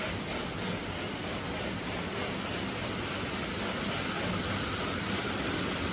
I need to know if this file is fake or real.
real